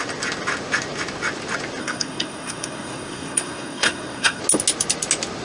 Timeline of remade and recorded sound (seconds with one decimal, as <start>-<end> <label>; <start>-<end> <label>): 0.0-1.8 recorded; 1.8-4.4 remade; 4.4-5.4 recorded